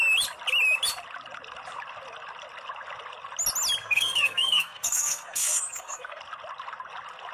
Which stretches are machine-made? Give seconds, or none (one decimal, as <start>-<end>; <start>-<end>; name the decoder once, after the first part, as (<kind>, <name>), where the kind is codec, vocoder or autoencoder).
3.8-6.2 (codec, SNAC)